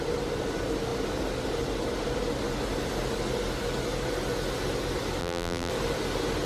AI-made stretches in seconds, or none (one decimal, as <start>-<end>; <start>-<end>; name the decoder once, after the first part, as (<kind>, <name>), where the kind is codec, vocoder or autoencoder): 5.2-5.7 (vocoder, BigVGAN v2)